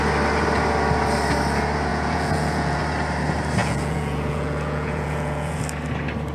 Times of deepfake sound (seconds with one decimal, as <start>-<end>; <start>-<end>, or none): 1.9-2.8; 3.6-5.6